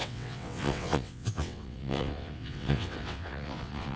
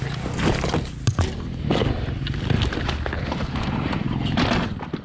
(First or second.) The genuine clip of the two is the second